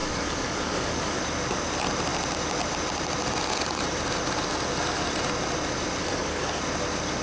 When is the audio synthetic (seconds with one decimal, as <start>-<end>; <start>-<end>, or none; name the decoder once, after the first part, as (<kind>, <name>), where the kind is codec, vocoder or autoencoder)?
0.0-1.2 (codec, DAC); 6.0-6.6